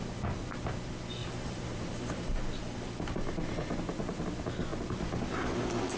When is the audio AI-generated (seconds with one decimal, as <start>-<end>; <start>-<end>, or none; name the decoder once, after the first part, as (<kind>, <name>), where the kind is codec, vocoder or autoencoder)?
1.2-2.4 (vocoder, BigVGAN v2)